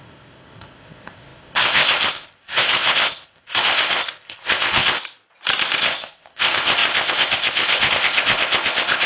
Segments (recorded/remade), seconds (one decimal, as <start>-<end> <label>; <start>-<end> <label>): 0.0-5.0 remade; 5.0-5.8 recorded; 5.8-9.1 remade